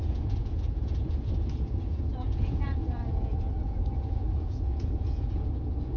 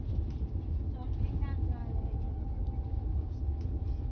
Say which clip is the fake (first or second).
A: first